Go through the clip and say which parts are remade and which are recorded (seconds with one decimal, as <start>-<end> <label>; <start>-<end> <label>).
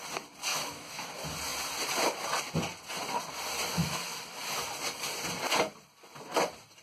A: 0.0-0.5 recorded; 0.5-1.1 remade; 1.1-3.7 recorded; 3.7-4.6 remade; 4.6-6.8 recorded